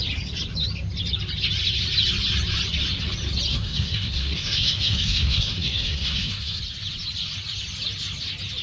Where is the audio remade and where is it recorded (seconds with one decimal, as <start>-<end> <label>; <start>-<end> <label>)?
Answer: 0.0-3.5 recorded; 3.5-6.6 remade; 6.6-8.6 recorded